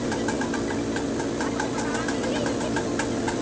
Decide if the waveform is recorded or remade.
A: recorded